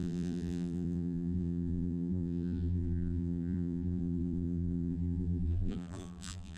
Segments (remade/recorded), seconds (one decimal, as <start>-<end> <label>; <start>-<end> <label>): 0.0-6.6 remade